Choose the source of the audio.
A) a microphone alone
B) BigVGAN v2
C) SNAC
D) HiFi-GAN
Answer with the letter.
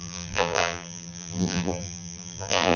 B